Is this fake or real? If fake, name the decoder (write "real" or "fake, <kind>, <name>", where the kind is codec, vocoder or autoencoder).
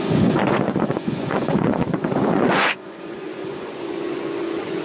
fake, vocoder, Vocos